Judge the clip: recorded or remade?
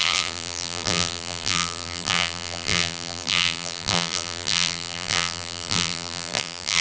remade